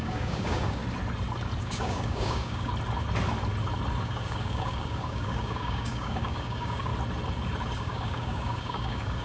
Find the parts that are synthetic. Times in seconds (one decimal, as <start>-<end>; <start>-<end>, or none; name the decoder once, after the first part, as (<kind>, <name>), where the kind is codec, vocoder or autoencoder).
0.0-0.8 (codec, DAC); 1.6-2.7; 4.0-6.9; 7.8-9.2